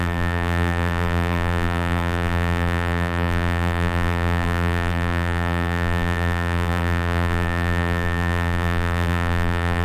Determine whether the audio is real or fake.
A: fake